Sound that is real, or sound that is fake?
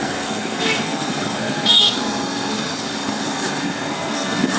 fake